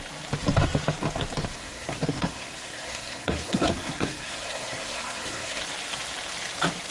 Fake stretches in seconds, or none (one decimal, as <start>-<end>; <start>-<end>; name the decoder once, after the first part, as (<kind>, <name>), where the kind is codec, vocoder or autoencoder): 1.5-5.6 (codec, SNAC)